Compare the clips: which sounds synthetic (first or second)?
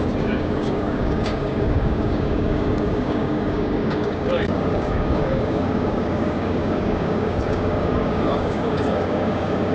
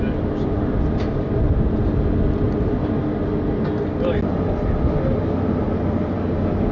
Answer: first